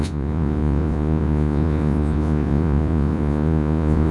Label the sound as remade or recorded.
remade